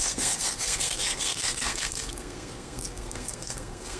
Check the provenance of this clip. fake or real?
fake